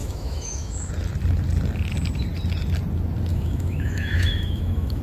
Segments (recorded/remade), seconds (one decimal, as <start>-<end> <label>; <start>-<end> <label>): 0.0-0.9 remade; 0.9-3.3 recorded; 3.3-5.0 remade